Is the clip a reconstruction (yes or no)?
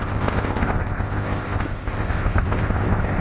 yes